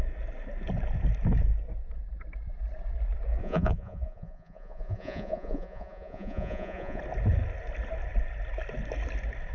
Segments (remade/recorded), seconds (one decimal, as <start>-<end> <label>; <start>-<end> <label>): 0.0-3.4 recorded; 3.4-7.0 remade; 7.0-9.5 recorded